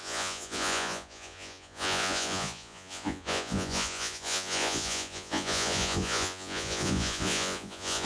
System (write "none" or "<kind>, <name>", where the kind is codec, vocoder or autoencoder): vocoder, Vocos